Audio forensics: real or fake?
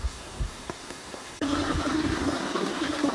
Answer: fake